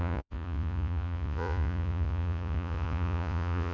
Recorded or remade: remade